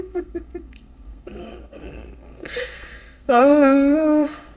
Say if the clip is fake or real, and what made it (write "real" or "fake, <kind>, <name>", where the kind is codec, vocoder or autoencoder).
fake, codec, SNAC